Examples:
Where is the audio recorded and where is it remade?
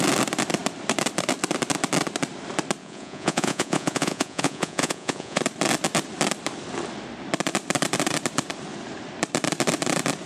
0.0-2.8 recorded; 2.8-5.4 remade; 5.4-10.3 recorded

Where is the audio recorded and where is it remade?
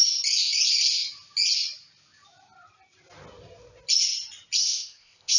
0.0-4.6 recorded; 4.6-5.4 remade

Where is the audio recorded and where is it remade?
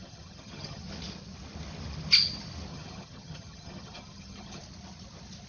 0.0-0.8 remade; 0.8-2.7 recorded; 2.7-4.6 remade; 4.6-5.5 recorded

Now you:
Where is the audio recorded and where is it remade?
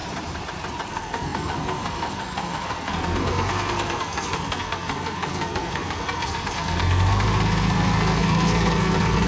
0.0-0.9 recorded; 0.9-9.3 remade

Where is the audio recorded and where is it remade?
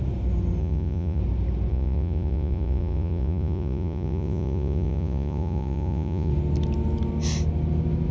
0.0-0.6 recorded; 0.6-1.2 remade; 1.2-1.7 recorded; 1.7-6.3 remade; 6.3-8.1 recorded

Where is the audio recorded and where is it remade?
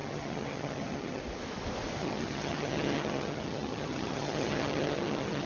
0.0-1.2 remade; 1.2-2.0 recorded; 2.0-5.5 remade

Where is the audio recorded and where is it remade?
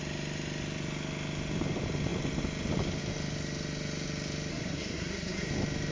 0.0-4.5 recorded; 4.5-5.5 remade; 5.5-5.9 recorded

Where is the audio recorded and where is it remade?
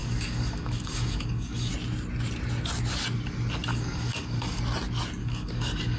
0.0-1.7 remade; 1.7-3.7 recorded; 3.7-4.6 remade; 4.6-5.2 recorded; 5.2-6.0 remade